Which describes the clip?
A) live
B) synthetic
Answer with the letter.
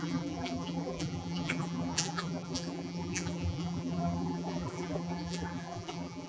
B